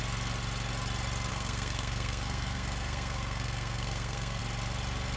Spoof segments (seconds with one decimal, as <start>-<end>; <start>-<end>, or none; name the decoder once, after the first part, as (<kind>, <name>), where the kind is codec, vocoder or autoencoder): 1.3-4.4 (codec, SNAC)